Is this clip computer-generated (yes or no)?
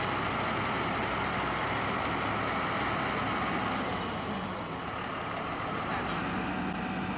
no